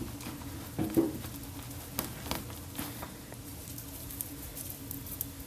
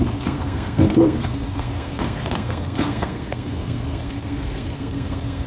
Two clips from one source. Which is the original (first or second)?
first